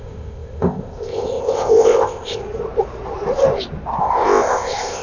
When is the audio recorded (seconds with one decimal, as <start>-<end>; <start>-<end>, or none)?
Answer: 2.4-4.0